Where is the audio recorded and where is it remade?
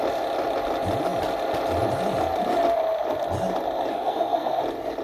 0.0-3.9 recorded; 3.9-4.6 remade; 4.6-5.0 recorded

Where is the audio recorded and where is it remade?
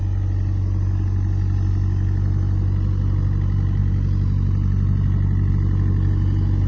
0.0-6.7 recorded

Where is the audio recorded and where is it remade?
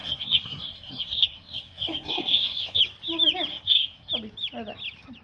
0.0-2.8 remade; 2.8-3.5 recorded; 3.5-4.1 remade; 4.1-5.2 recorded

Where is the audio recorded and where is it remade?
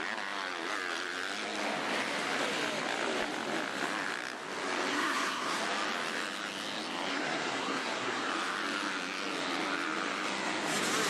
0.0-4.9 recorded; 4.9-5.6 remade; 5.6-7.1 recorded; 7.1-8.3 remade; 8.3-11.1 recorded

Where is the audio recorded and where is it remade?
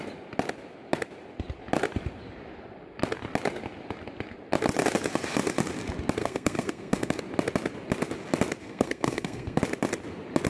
0.0-6.2 recorded; 6.2-7.2 remade; 7.2-8.6 recorded; 8.6-9.6 remade; 9.6-10.5 recorded